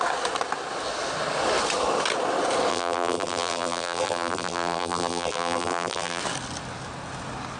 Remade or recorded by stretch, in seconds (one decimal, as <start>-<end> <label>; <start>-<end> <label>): 0.0-2.7 recorded; 2.7-6.2 remade; 6.2-7.6 recorded